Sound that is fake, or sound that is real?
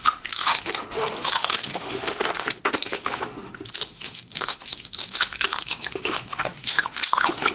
fake